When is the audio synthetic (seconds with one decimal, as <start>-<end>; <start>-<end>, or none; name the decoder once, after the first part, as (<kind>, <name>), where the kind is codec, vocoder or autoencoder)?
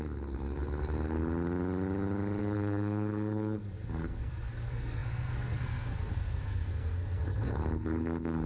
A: 0.0-1.2 (codec, SNAC); 2.4-8.5